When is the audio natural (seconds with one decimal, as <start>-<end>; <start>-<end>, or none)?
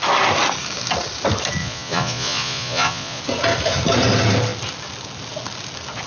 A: 0.0-1.6; 3.2-6.1